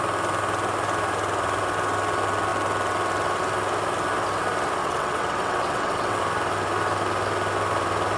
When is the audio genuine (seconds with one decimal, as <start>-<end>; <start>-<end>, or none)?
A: 0.0-4.8; 6.2-8.2